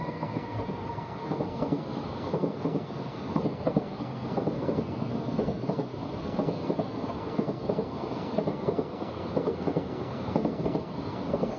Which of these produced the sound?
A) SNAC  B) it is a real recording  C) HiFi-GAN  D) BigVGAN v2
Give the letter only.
A